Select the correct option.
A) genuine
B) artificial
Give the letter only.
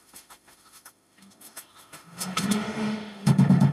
B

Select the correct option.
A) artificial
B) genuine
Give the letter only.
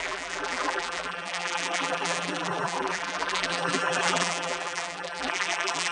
A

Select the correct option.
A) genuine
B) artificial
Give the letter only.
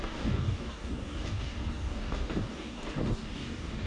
B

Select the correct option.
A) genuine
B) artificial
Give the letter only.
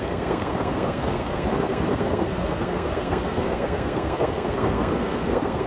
B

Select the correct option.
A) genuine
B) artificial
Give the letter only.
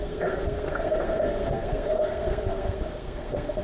B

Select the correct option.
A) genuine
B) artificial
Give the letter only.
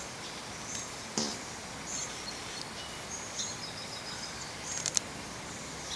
B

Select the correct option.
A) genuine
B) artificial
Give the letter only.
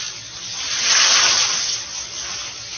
A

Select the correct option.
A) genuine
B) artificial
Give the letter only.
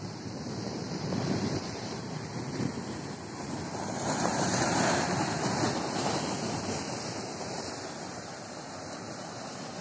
B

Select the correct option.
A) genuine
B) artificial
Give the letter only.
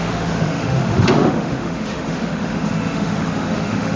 B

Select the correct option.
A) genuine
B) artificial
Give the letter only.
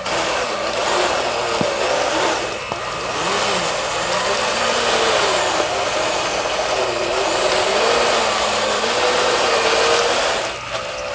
A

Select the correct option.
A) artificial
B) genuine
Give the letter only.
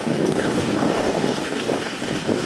A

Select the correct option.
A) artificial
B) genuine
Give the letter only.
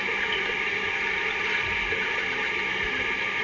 B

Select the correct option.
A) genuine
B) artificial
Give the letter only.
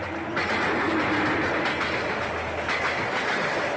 A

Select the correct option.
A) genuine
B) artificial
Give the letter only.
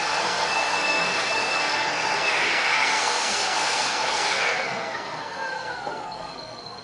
B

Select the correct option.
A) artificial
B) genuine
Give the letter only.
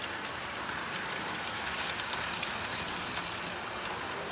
B